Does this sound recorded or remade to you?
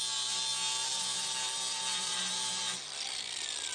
recorded